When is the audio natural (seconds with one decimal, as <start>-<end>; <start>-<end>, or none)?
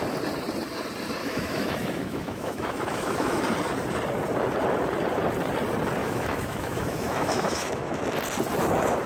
0.0-1.2; 3.4-6.0; 8.0-9.1